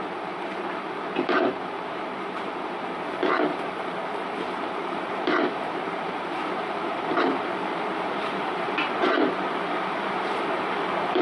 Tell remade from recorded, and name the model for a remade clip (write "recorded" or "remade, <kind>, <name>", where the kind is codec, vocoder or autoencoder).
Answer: remade, vocoder, BigVGAN v2